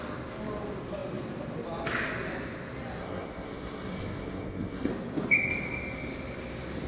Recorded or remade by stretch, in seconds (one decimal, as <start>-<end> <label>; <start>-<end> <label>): 0.0-3.0 recorded; 3.0-4.9 remade; 4.9-6.9 recorded